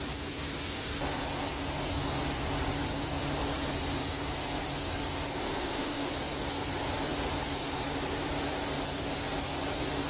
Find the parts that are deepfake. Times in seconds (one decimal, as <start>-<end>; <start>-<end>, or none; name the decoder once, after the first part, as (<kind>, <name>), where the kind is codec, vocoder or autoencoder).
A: 5.4-6.1 (autoencoder, DAC-VAE)

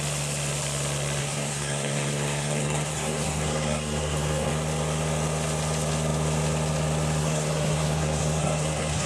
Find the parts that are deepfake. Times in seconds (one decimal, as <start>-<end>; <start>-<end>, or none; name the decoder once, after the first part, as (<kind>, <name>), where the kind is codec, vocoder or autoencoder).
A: 1.2-4.5 (codec, SNAC); 7.2-9.1

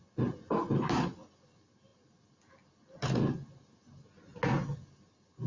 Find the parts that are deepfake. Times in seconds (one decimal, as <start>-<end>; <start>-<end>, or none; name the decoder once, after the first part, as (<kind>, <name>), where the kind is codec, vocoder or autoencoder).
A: none

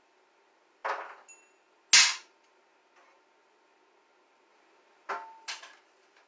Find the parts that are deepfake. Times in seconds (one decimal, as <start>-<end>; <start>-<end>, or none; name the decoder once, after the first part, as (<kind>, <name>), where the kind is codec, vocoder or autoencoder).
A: none